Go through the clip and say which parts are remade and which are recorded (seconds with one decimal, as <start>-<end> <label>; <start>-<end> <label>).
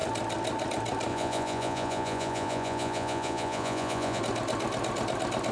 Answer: 0.0-1.1 recorded; 1.1-4.2 remade; 4.2-5.5 recorded